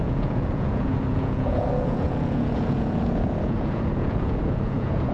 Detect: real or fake fake